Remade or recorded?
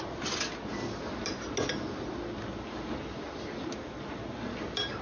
recorded